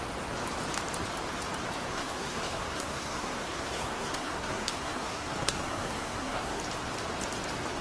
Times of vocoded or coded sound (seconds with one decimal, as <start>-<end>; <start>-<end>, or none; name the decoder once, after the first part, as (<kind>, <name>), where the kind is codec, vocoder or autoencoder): 1.9-6.6 (codec, SNAC)